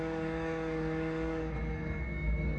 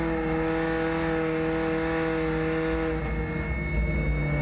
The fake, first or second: first